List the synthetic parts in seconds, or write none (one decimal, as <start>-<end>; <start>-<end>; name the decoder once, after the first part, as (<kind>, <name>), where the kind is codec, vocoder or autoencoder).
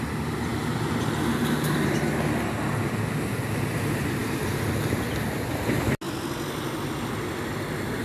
none